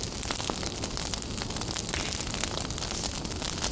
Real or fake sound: real